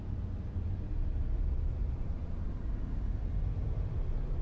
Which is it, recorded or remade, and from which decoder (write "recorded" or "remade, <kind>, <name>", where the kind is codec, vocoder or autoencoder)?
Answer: recorded